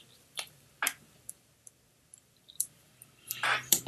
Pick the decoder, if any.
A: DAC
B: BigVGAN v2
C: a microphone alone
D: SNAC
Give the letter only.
B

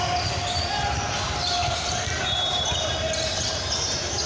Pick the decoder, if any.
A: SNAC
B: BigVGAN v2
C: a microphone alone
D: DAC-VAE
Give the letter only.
C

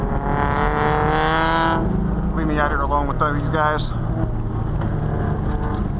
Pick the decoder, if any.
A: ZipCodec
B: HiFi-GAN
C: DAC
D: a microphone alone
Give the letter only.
D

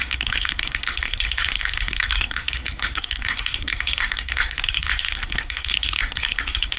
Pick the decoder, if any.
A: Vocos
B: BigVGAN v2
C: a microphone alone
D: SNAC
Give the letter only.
D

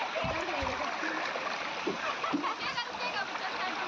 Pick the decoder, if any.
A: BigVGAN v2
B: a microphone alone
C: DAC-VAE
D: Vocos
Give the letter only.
B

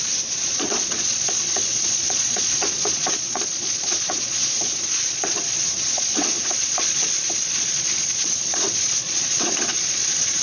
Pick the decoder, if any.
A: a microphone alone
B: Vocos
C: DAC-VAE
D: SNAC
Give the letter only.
B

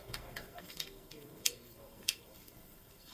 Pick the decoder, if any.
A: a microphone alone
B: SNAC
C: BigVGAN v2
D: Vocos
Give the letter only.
B